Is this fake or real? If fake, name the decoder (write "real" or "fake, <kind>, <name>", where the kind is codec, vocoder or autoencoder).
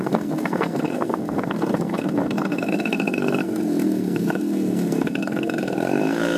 fake, codec, SNAC